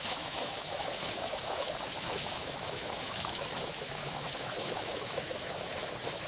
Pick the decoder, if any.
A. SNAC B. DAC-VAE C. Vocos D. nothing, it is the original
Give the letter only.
B